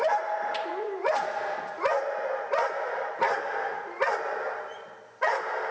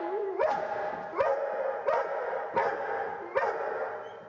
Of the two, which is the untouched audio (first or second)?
second